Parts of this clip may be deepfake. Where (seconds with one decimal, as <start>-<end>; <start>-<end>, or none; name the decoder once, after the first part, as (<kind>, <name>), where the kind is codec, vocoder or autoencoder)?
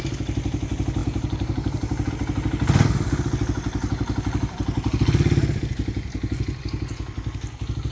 1.0-2.1 (vocoder, BigVGAN v2)